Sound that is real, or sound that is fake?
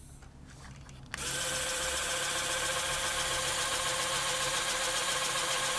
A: real